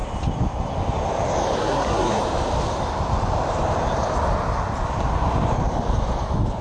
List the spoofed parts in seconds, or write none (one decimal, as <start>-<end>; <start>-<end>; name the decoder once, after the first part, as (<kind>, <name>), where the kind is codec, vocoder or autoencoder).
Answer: 1.6-2.2 (codec, SNAC)